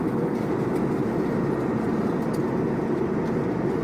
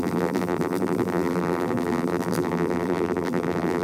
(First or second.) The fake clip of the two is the second